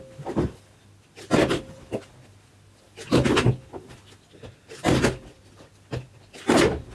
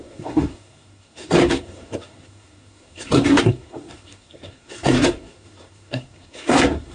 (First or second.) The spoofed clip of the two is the second